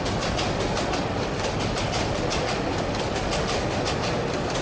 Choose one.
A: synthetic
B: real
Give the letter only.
B